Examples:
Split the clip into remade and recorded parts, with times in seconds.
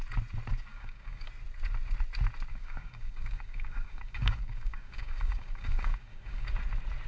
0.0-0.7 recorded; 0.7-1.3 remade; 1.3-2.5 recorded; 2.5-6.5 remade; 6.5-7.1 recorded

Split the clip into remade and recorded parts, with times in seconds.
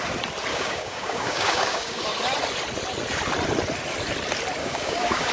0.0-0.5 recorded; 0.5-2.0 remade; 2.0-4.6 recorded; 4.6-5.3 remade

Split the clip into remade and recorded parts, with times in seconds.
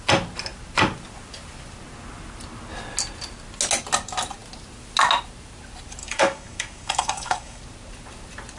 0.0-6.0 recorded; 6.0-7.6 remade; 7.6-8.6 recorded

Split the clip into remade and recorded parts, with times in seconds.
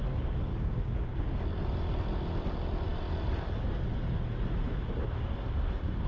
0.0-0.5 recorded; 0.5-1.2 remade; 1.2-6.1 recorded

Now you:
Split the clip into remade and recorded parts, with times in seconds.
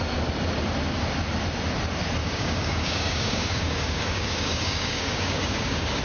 0.0-2.2 recorded; 2.2-6.0 remade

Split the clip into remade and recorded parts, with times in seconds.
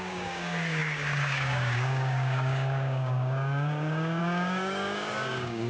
0.0-5.7 remade